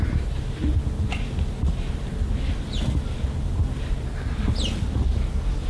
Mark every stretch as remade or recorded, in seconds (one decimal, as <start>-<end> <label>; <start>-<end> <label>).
0.0-5.7 recorded